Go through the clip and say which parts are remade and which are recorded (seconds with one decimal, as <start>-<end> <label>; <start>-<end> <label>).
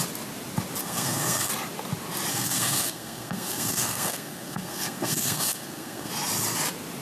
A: 0.0-0.8 recorded; 0.8-1.5 remade; 1.5-2.3 recorded; 2.3-6.1 remade; 6.1-7.0 recorded